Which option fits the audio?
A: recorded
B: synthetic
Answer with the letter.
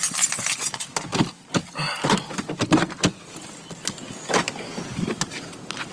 A